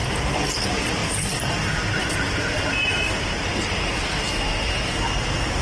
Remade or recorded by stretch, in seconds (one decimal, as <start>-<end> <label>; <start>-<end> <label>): 0.0-5.6 recorded